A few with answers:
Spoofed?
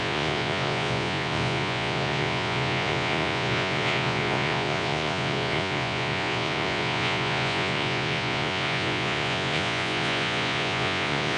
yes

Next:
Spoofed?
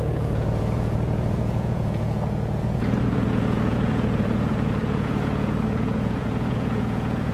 yes